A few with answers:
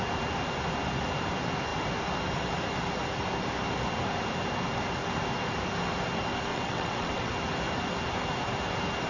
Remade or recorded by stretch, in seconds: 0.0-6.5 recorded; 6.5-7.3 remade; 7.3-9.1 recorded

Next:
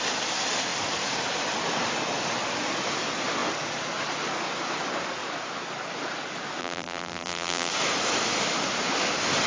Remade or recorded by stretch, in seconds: 0.0-6.6 recorded; 6.6-7.7 remade; 7.7-9.5 recorded

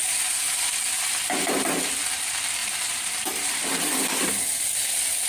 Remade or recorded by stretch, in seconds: 0.0-2.6 recorded; 2.6-4.3 remade; 4.3-5.3 recorded

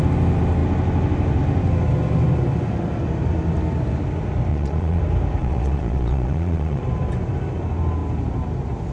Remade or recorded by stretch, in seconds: 0.0-4.5 recorded; 4.5-5.0 remade; 5.0-5.4 recorded; 5.4-6.8 remade; 6.8-8.9 recorded

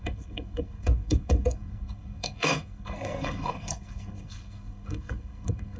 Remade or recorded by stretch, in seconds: 0.0-5.8 remade

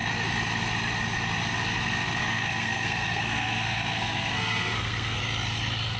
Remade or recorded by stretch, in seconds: 0.0-2.2 recorded; 2.2-5.2 remade; 5.2-6.0 recorded